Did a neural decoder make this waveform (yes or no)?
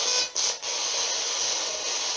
no